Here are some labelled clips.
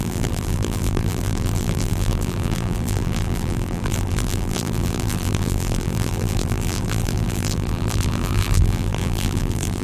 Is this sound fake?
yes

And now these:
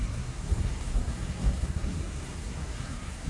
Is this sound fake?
yes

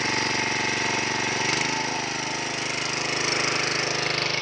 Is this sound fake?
no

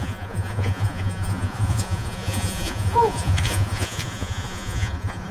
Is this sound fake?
yes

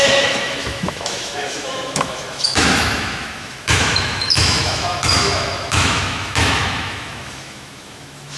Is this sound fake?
yes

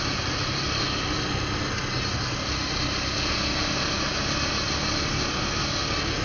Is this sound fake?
no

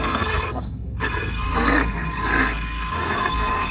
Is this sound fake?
yes